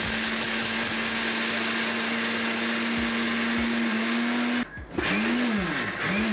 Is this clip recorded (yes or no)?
yes